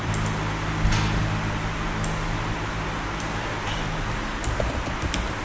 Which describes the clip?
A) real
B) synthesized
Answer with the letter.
A